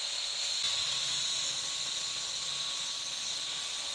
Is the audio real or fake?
real